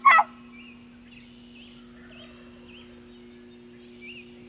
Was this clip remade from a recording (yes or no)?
no